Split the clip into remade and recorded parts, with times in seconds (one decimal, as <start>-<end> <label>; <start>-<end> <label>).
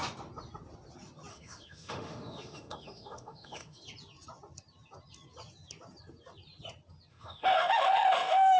0.0-1.3 recorded; 1.3-3.8 remade; 3.8-7.1 recorded; 7.1-8.6 remade